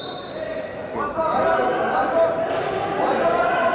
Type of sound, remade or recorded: recorded